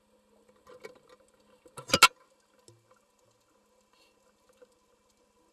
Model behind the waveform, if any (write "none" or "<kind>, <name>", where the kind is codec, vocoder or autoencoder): none